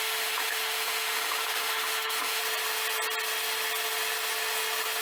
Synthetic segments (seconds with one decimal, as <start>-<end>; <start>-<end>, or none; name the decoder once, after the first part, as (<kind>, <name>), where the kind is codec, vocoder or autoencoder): 0.0-2.4 (autoencoder, DAC-VAE)